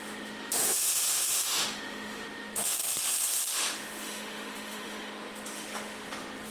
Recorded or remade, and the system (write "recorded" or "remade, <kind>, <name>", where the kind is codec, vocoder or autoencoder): remade, autoencoder, DAC-VAE